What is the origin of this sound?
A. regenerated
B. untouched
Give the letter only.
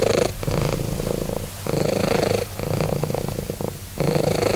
B